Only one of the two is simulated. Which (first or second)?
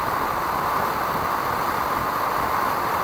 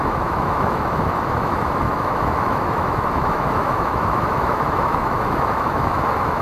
second